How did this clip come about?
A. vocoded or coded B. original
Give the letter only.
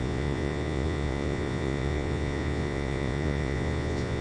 A